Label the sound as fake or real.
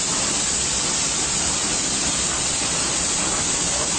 real